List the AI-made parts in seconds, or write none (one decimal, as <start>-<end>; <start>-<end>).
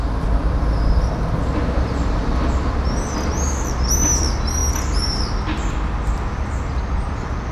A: none